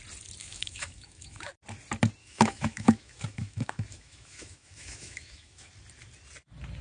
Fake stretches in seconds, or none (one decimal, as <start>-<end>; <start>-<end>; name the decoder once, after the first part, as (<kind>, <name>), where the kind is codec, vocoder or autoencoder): 0.4-1.5 (autoencoder, DAC-VAE); 2.2-5.7